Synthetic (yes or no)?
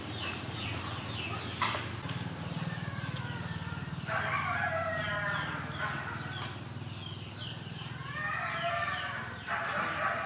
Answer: no